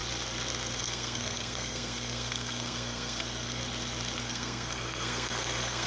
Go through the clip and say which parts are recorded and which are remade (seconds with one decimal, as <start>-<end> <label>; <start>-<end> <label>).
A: 0.0-0.8 recorded; 0.8-3.6 remade; 3.6-4.2 recorded; 4.2-5.9 remade

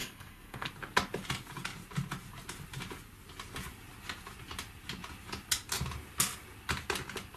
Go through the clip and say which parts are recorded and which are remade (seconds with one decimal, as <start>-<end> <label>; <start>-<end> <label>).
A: 0.0-0.7 remade; 0.7-7.4 recorded

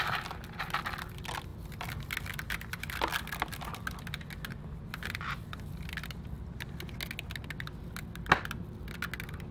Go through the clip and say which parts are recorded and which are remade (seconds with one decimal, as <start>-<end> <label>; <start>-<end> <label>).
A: 0.0-9.5 recorded

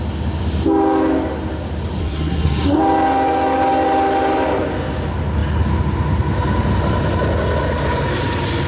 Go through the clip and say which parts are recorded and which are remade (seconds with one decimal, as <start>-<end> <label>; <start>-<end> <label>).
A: 0.0-2.0 recorded; 2.0-2.8 remade; 2.8-8.7 recorded

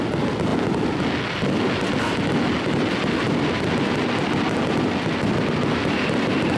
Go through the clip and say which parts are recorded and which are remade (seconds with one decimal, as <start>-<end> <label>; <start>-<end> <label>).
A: 0.0-6.6 recorded